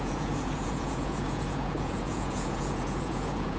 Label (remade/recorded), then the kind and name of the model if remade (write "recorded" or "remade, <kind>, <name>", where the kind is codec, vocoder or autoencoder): remade, vocoder, Vocos